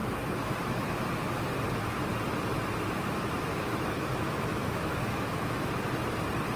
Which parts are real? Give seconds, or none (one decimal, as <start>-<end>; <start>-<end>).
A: 0.9-3.5; 5.7-6.6